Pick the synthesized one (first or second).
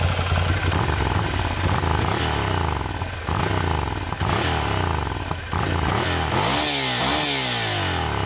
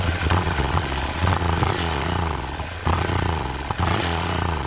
second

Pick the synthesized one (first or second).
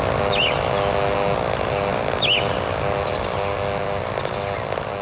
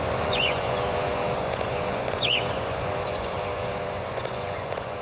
second